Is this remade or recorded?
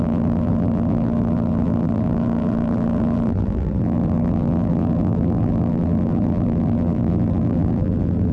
remade